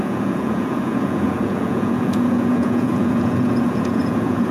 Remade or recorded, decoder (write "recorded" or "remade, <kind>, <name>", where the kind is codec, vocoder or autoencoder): remade, vocoder, Vocos